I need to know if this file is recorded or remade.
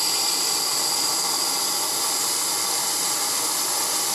recorded